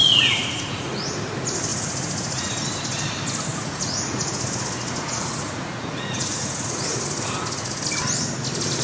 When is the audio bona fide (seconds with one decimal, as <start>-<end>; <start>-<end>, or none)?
1.2-1.7; 2.5-3.5; 7.8-8.8